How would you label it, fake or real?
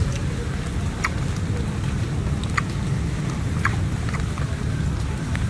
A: fake